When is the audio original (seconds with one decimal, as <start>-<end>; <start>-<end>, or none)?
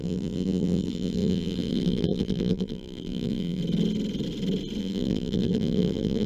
3.6-4.8